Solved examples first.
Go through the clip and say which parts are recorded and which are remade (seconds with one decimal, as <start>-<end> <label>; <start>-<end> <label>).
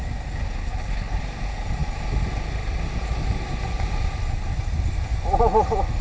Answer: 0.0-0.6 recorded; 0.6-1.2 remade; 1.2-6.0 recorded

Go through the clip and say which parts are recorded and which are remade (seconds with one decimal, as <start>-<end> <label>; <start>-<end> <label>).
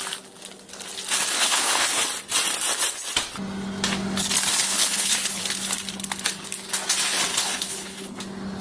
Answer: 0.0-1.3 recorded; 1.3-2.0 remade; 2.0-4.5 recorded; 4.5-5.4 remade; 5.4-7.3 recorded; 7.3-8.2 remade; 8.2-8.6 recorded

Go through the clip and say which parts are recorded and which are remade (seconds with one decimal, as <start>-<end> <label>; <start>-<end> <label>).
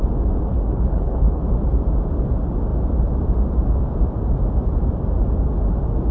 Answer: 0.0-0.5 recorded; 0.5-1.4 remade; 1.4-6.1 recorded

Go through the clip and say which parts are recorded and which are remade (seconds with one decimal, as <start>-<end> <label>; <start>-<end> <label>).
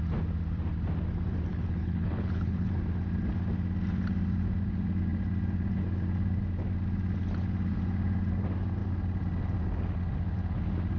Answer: 0.0-1.5 recorded; 1.5-2.7 remade; 2.7-11.0 recorded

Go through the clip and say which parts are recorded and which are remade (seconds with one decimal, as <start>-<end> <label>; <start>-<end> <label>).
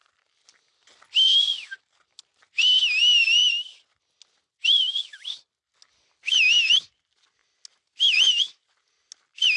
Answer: 0.0-9.6 recorded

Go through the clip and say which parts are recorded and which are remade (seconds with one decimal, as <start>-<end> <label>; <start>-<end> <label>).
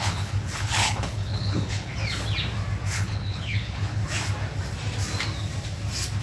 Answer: 0.0-1.9 remade; 1.9-2.9 recorded; 2.9-4.0 remade; 4.0-6.2 recorded